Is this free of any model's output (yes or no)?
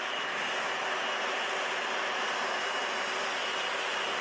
yes